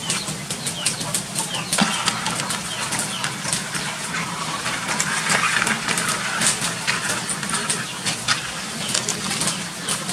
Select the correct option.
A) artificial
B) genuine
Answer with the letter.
B